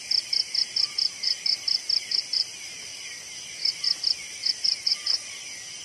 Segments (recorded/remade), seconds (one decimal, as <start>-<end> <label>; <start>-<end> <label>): 0.0-4.4 recorded; 4.4-4.9 remade; 4.9-5.8 recorded